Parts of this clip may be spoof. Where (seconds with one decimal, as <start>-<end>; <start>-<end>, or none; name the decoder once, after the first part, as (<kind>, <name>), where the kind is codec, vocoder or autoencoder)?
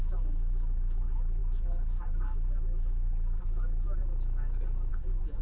0.0-4.0 (vocoder, BigVGAN v2); 4.9-5.4